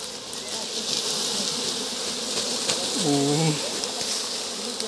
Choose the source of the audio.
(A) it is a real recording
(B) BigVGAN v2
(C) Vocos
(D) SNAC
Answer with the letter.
A